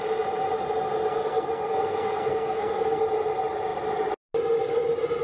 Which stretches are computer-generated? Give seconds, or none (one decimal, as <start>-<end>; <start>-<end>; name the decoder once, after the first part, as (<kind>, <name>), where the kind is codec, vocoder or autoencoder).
1.1-3.0 (codec, SNAC)